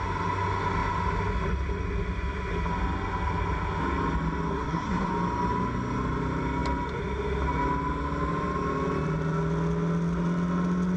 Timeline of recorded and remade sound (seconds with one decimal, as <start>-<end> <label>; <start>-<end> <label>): 0.0-4.5 recorded; 4.5-5.1 remade; 5.1-11.0 recorded